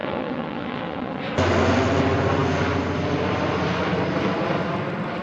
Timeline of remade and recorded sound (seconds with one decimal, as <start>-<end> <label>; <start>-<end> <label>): 0.0-1.2 remade; 1.2-5.2 recorded